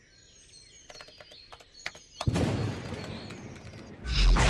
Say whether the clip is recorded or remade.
recorded